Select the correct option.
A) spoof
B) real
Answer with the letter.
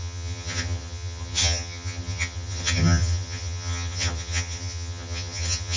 A